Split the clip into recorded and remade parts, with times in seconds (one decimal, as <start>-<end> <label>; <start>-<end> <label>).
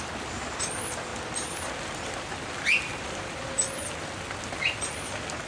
0.0-5.5 recorded